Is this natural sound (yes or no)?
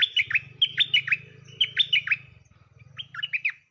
yes